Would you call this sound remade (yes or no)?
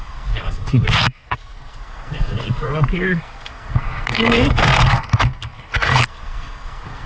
yes